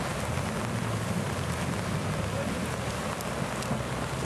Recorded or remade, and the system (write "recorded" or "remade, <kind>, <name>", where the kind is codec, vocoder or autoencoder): recorded